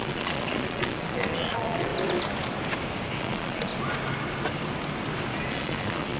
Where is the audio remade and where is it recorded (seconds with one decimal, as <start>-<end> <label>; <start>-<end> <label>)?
0.0-1.9 remade; 1.9-3.2 recorded; 3.2-3.7 remade; 3.7-5.5 recorded; 5.5-6.2 remade